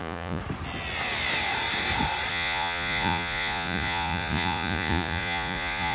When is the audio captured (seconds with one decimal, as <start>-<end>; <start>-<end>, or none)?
0.4-2.3

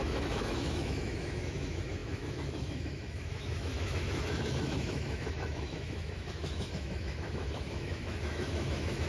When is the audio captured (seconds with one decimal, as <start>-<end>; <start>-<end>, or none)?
none

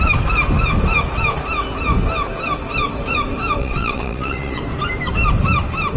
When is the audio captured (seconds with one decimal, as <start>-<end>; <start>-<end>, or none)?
0.0-3.6; 4.6-6.0